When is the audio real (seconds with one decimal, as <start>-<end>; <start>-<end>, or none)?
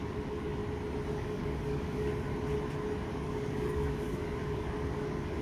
0.6-1.1; 2.1-3.1